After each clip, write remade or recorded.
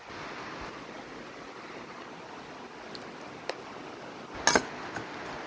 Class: recorded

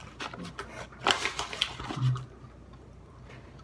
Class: recorded